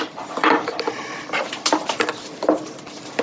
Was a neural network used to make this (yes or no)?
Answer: no